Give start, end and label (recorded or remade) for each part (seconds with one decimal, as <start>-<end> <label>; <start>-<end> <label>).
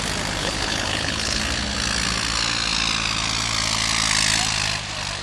0.0-0.4 recorded; 0.4-1.4 remade; 1.4-5.2 recorded